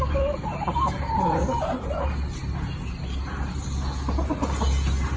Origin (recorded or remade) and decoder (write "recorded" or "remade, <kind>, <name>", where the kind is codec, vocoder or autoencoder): recorded